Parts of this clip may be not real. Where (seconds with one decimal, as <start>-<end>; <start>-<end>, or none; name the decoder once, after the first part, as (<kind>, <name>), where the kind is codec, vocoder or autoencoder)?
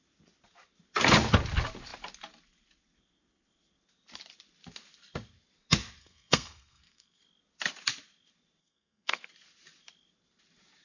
6.0-7.2 (codec, SNAC); 8.6-9.3